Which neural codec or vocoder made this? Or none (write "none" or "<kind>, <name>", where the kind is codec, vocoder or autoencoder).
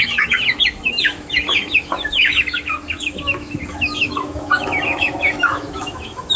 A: autoencoder, DAC-VAE